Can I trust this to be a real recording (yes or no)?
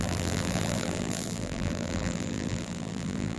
no